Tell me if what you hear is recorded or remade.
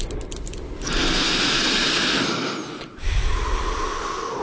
recorded